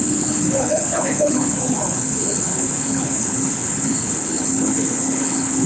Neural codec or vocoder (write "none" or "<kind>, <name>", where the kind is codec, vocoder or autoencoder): codec, HILCodec